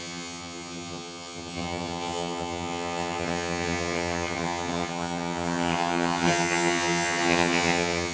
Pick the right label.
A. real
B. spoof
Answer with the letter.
B